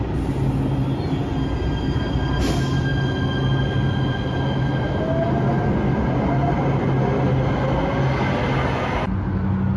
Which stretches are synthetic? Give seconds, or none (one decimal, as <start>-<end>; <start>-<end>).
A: none